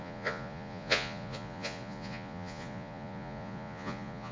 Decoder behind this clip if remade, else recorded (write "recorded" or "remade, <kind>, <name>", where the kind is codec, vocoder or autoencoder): remade, vocoder, Vocos